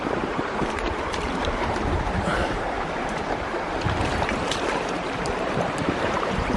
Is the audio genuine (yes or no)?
no